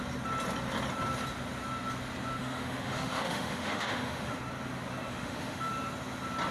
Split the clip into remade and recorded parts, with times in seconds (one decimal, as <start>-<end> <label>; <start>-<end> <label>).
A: 0.0-2.4 recorded; 2.4-4.4 remade; 4.4-5.1 recorded; 5.1-5.7 remade; 5.7-6.5 recorded